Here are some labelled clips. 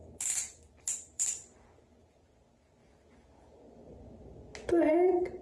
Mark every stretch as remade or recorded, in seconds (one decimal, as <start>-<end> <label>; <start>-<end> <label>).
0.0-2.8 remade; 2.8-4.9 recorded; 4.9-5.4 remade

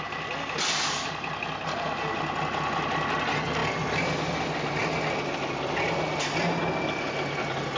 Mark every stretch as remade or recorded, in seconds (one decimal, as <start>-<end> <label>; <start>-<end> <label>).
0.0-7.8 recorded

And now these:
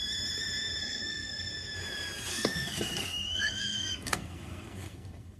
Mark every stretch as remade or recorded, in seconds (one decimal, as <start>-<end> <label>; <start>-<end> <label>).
0.0-0.8 recorded; 0.8-1.5 remade; 1.5-2.3 recorded; 2.3-5.4 remade

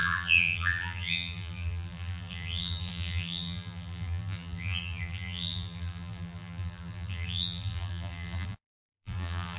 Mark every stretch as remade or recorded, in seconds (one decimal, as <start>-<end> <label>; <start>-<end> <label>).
0.0-9.6 remade

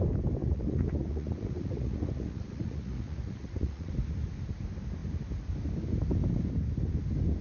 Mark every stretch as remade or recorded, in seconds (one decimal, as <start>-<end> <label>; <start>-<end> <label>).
0.0-0.4 recorded; 0.4-3.9 remade; 3.9-7.4 recorded

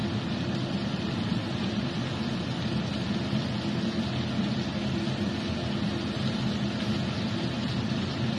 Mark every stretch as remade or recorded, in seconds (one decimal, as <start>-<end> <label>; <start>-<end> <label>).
0.0-8.4 recorded